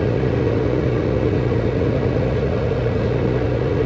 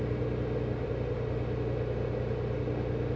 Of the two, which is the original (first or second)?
second